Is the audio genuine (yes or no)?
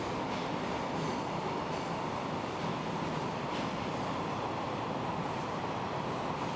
yes